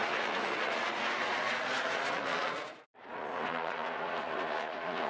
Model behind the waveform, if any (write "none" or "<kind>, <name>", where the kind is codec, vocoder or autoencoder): vocoder, Vocos